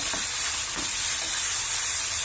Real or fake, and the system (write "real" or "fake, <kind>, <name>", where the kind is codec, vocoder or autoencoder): real